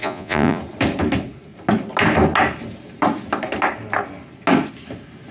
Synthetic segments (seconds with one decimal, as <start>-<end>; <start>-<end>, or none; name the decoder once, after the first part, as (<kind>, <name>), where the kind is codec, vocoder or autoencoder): 0.0-0.6 (vocoder, Vocos)